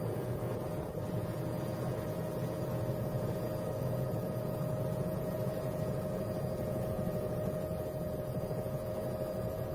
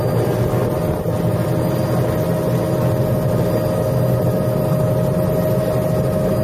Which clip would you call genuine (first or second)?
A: second